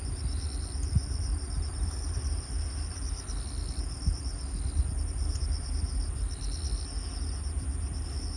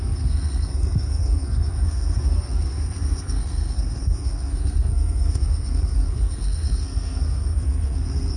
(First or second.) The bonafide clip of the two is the first